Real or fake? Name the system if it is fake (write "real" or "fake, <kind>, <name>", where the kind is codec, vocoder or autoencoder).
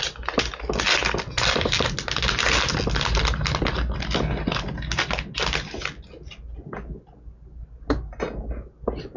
real